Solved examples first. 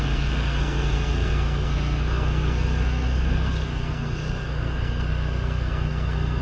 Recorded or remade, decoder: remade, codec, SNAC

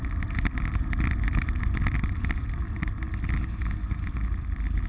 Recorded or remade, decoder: recorded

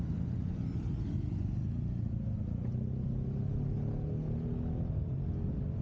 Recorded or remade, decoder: recorded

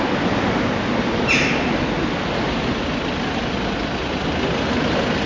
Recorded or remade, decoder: recorded